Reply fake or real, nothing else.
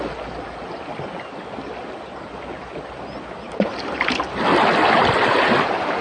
real